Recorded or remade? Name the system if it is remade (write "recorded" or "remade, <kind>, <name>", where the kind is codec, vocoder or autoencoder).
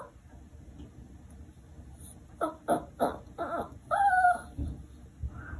recorded